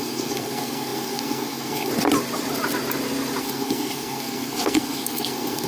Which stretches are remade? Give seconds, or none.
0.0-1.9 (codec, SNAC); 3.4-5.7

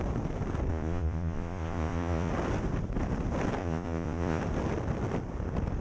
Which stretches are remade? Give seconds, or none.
0.7-2.3 (vocoder, Vocos); 3.6-4.4

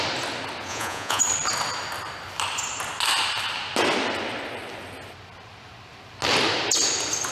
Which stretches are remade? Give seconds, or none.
0.7-1.2 (vocoder, Vocos)

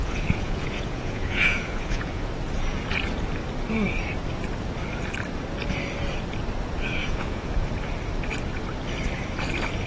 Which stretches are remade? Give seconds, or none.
0.0-2.3 (vocoder, Vocos); 7.0-7.7

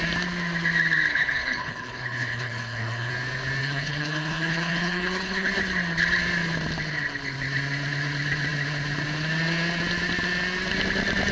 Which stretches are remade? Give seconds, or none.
1.1-3.1 (codec, HILCodec); 3.6-5.5